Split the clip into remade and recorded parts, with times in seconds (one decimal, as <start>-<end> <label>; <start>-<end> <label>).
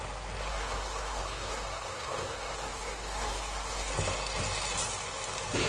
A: 0.0-0.5 recorded; 0.5-3.9 remade; 3.9-5.7 recorded